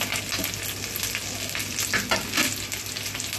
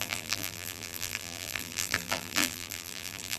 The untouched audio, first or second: first